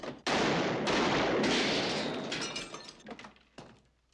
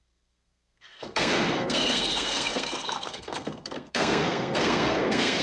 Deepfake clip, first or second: second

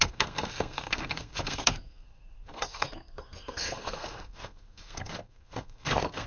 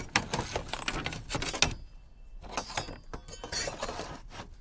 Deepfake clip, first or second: first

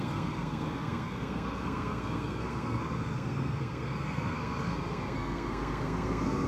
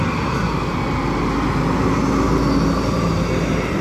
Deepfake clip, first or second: first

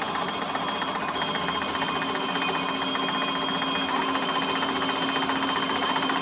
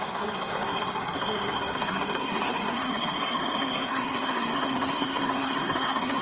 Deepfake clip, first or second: second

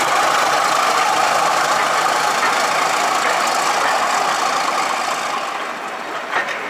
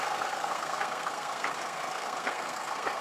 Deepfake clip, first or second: second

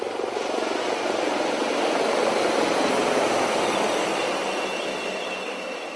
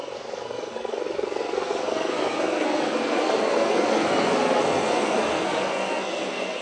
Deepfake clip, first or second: second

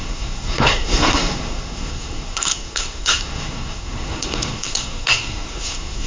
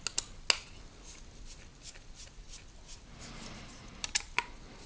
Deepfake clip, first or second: first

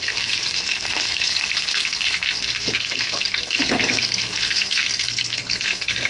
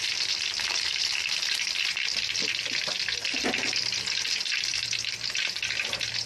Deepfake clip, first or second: first